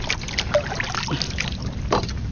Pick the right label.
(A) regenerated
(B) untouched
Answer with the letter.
B